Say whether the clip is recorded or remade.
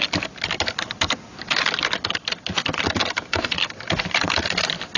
recorded